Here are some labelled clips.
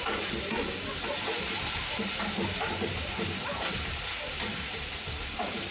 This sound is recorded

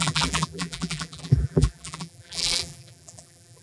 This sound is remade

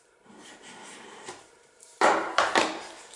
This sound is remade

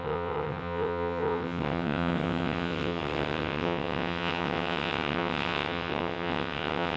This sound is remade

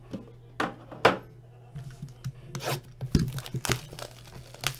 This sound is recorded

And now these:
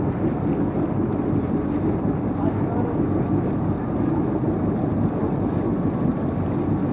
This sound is recorded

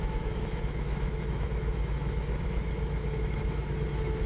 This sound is remade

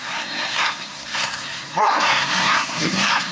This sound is remade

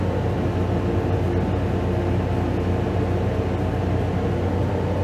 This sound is recorded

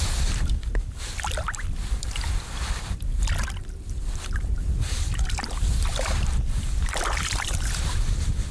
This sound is remade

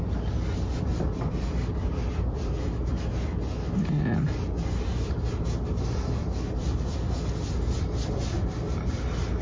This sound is recorded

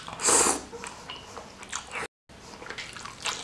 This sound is recorded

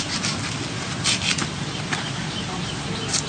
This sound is recorded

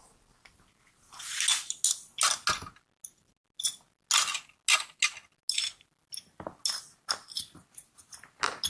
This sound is recorded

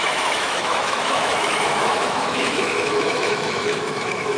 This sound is remade